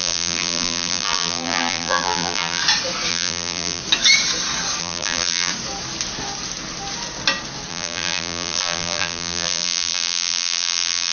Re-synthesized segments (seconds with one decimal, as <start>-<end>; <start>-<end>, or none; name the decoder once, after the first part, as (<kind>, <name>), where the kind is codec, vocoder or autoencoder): 0.0-2.6 (vocoder, BigVGAN v2); 3.1-3.8; 4.8-5.5; 7.7-11.1